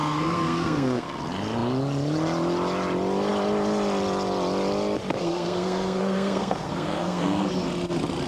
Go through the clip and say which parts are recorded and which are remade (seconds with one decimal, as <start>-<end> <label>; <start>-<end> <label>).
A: 0.0-1.2 remade; 1.2-5.2 recorded; 5.2-7.4 remade; 7.4-8.3 recorded